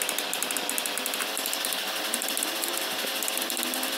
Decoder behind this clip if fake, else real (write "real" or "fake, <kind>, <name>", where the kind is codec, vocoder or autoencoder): real